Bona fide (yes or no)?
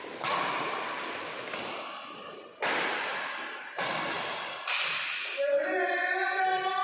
yes